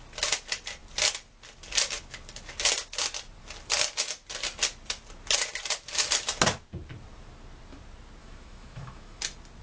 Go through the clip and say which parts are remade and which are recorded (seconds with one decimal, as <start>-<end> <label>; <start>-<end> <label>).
0.0-8.2 recorded; 8.2-9.2 remade; 9.2-9.6 recorded